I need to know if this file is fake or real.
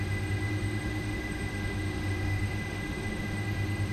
fake